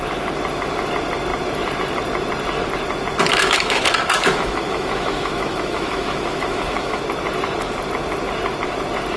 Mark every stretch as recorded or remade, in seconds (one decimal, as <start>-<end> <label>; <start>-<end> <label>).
0.0-3.3 recorded; 3.3-7.0 remade; 7.0-9.2 recorded